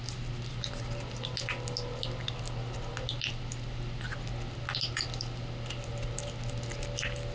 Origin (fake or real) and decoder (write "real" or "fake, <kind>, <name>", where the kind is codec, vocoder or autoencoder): real